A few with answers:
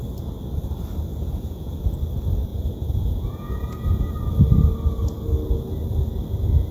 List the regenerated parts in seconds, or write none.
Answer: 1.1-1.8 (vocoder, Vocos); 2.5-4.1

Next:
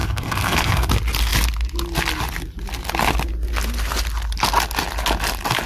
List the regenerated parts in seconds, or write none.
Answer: 0.0-0.9 (codec, SNAC)

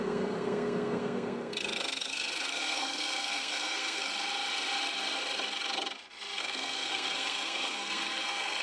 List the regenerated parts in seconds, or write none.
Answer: 0.0-4.1 (codec, SNAC); 6.4-8.6

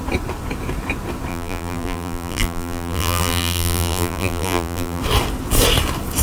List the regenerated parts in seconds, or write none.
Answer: 1.3-5.0 (vocoder, BigVGAN v2)

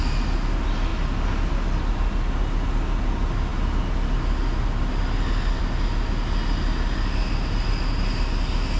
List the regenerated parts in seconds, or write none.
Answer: none

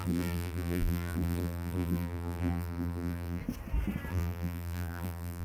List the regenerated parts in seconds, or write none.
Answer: 0.0-3.4 (vocoder, BigVGAN v2); 4.1-5.4